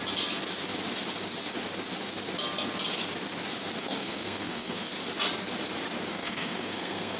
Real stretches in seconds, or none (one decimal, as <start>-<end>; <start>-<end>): 0.0-3.8; 4.9-6.1